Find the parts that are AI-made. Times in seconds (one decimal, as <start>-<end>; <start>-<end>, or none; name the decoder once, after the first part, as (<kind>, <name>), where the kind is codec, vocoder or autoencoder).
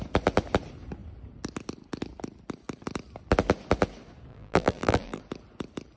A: 4.3-5.2 (vocoder, BigVGAN v2)